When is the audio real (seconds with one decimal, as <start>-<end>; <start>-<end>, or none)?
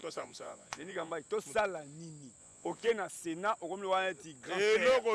1.1-2.4; 2.9-5.1